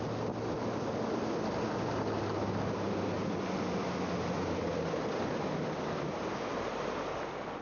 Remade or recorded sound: recorded